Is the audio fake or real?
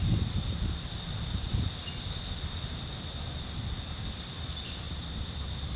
real